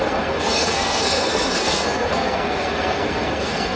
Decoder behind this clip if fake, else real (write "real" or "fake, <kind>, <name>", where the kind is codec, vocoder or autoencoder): fake, codec, SNAC